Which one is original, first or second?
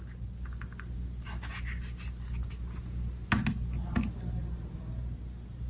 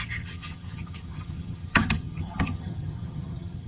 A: first